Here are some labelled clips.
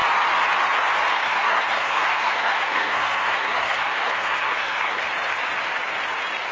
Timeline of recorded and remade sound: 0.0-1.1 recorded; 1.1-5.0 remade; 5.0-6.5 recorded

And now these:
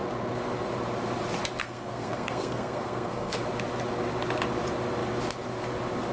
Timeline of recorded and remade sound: 0.0-1.6 recorded; 1.6-3.4 remade; 3.4-6.1 recorded

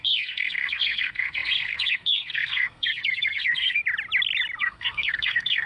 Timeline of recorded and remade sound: 0.0-3.8 remade; 3.8-4.6 recorded; 4.6-5.7 remade

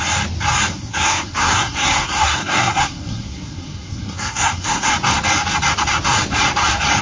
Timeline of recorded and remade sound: 0.0-0.7 recorded; 0.7-4.9 remade; 4.9-7.0 recorded

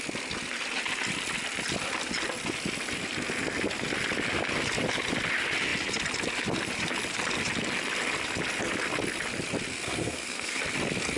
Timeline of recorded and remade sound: 0.0-9.7 recorded; 9.7-10.6 remade; 10.6-11.2 recorded